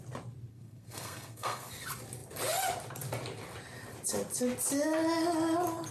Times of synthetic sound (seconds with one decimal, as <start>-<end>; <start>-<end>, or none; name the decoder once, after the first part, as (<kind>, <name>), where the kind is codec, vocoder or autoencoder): 0.5-1.7 (codec, SNAC)